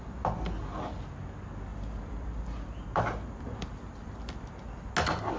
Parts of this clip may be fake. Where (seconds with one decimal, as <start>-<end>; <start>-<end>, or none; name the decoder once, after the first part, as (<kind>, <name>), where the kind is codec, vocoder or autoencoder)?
1.7-4.9 (vocoder, BigVGAN v2)